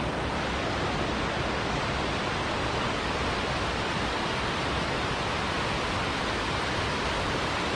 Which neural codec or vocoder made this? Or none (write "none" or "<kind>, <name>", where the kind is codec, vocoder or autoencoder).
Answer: none